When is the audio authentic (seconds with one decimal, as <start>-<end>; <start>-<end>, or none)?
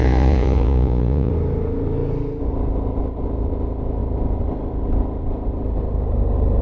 1.3-6.6